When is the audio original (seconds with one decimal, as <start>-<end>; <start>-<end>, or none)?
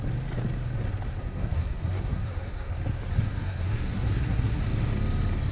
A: 0.0-1.2; 2.7-3.1; 4.6-5.5